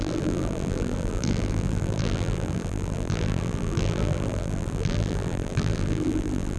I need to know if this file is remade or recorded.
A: remade